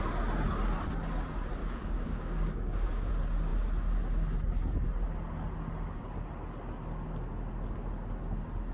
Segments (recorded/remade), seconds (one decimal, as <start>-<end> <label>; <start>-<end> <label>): 0.0-1.6 recorded; 1.6-3.1 remade; 3.1-8.7 recorded